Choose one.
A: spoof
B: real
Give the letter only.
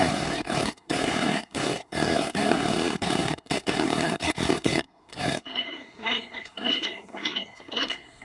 A